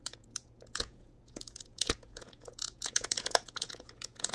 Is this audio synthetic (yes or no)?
yes